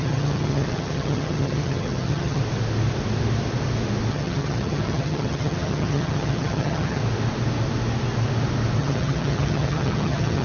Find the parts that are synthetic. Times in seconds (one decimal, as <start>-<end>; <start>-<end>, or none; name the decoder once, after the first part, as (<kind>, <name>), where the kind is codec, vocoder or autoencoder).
0.0-2.4 (vocoder, HiFi-GAN); 4.1-7.0; 8.8-10.4